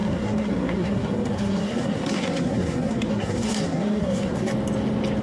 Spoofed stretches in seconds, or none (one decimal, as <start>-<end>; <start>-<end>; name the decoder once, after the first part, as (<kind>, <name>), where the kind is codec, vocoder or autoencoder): 0.0-4.5 (codec, SNAC)